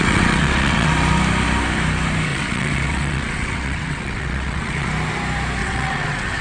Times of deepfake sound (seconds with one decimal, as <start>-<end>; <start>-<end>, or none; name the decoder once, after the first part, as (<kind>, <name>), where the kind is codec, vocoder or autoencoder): 0.0-0.9 (vocoder, WaveNeXt); 2.3-4.9; 5.6-6.4